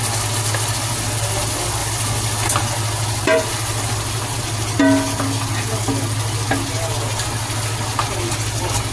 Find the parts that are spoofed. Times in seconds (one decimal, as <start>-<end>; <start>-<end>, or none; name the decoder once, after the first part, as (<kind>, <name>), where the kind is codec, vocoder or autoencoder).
none